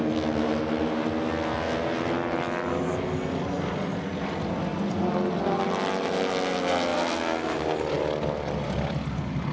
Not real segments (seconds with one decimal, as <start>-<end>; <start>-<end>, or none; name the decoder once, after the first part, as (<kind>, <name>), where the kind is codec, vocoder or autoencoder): none